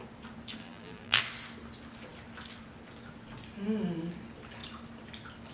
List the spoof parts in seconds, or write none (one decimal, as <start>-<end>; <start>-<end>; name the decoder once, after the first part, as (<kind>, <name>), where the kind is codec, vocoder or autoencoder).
0.6-1.2 (vocoder, BigVGAN v2)